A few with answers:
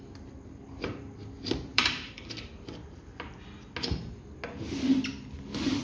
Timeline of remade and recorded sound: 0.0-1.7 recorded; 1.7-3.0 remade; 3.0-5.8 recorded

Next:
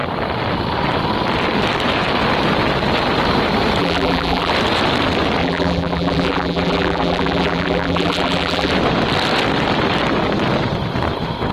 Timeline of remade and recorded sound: 0.0-3.8 recorded; 3.8-4.5 remade; 4.5-5.4 recorded; 5.4-8.7 remade; 8.7-11.5 recorded

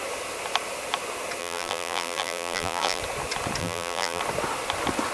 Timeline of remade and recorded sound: 0.0-1.4 recorded; 1.4-3.0 remade; 3.0-3.6 recorded; 3.6-4.2 remade; 4.2-5.1 recorded

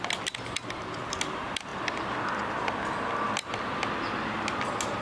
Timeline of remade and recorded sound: 0.0-5.0 recorded

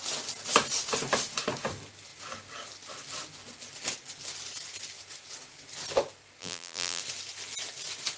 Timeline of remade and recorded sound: 0.0-6.4 recorded; 6.4-7.0 remade; 7.0-8.2 recorded